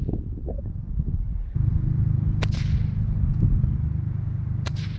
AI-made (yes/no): no